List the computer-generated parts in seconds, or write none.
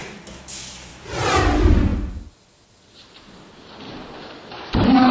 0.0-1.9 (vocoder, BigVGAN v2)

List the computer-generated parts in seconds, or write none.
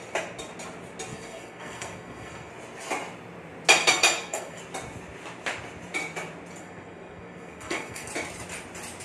1.1-2.5 (codec, SNAC); 3.8-4.6; 6.6-8.1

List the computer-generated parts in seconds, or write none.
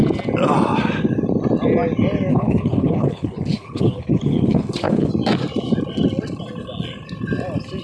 2.3-5.1 (codec, HILCodec)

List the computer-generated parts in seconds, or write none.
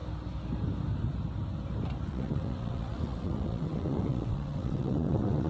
2.1-5.5 (vocoder, WaveNeXt)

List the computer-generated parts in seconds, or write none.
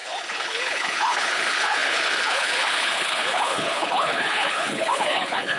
0.0-5.6 (codec, HILCodec)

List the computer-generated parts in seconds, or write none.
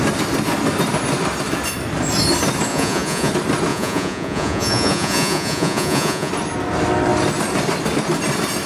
2.7-3.3 (vocoder, Vocos); 3.7-6.3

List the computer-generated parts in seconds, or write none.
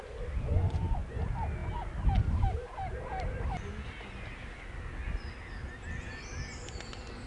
0.5-1.2 (vocoder, Vocos)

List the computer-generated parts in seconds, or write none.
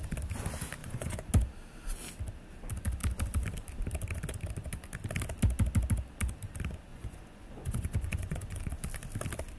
0.8-1.3 (vocoder, Vocos); 6.9-8.7